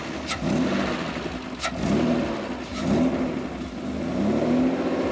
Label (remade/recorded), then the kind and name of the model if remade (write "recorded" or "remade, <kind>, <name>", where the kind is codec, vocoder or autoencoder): recorded